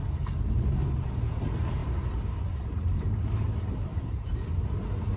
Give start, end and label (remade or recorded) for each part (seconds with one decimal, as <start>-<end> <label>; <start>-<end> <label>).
0.0-3.9 recorded; 3.9-4.5 remade; 4.5-5.2 recorded